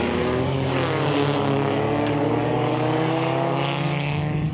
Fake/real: fake